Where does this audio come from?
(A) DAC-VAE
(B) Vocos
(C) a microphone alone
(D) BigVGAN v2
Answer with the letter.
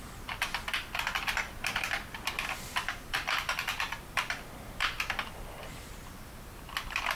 D